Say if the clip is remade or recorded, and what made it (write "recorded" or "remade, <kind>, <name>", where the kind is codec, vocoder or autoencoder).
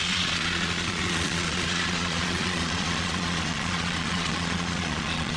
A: remade, vocoder, Vocos